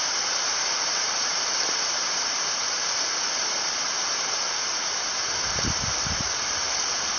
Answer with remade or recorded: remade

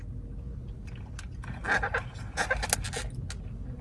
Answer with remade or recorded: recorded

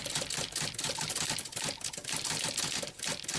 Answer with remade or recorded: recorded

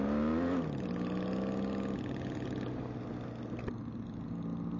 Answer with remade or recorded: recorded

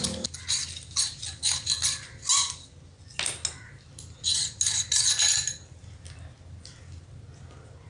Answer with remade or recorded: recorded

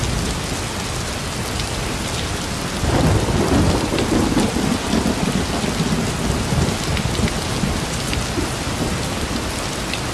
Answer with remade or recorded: recorded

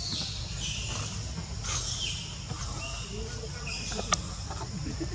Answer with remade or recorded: recorded